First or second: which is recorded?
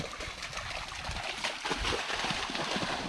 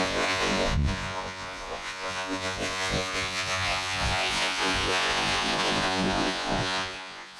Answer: first